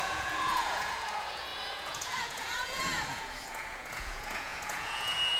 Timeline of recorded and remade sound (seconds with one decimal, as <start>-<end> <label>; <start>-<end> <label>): 0.0-5.4 remade